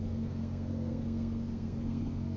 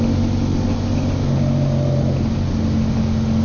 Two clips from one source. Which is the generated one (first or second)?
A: first